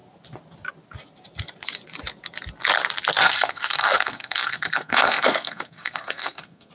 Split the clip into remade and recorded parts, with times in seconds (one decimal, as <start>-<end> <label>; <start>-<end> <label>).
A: 0.0-3.2 recorded; 3.2-6.7 remade